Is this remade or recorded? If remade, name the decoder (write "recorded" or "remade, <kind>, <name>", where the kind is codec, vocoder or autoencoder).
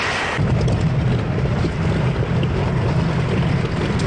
recorded